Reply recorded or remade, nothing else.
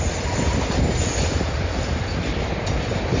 recorded